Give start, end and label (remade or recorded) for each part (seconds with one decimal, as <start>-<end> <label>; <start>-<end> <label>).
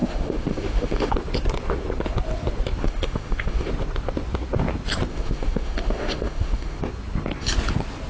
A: 0.0-1.1 remade; 1.1-2.8 recorded; 2.8-3.7 remade; 3.7-5.1 recorded; 5.1-6.8 remade; 6.8-8.1 recorded